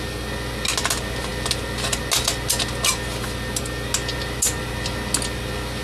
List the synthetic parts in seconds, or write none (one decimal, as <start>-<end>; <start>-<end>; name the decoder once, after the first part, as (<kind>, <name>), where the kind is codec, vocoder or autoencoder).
none